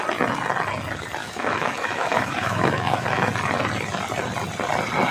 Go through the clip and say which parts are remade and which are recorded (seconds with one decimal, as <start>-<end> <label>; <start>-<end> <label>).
0.0-1.2 recorded; 1.2-3.3 remade; 3.3-5.1 recorded